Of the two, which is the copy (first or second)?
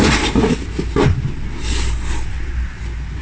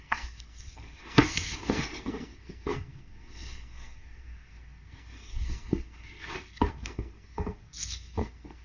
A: second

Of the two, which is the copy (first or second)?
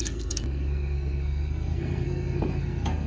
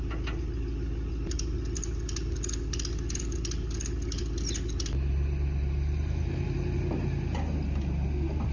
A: first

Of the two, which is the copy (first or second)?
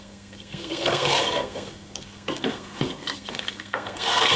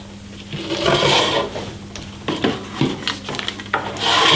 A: first